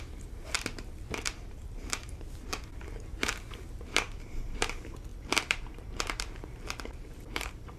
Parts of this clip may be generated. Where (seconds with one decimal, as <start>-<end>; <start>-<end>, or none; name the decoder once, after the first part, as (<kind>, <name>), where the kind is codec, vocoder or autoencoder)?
0.0-7.8 (vocoder, BigVGAN v2)